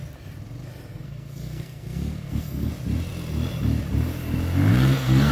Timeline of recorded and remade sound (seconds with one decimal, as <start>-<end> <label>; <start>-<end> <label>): 0.0-0.9 recorded; 0.9-2.7 remade; 2.7-4.7 recorded; 4.7-5.3 remade